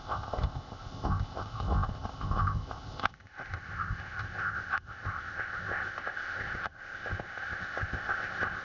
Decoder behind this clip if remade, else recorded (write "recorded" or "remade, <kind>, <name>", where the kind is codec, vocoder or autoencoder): remade, codec, ZipCodec